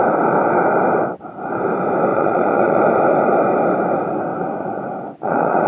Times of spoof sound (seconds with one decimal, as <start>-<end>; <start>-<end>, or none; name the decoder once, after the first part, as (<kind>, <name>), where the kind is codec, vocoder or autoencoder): 2.1-2.8 (vocoder, Vocos); 4.3-5.7